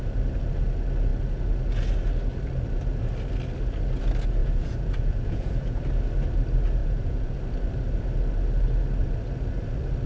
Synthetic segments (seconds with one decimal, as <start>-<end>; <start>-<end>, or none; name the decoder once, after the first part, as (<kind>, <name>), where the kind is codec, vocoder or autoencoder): 4.4-5.8 (vocoder, Vocos); 6.8-7.4